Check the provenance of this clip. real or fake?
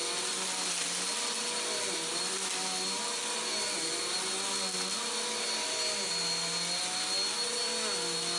real